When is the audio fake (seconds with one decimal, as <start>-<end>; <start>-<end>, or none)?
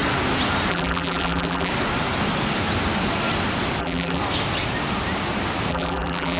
0.7-1.7; 3.8-4.2; 5.7-6.4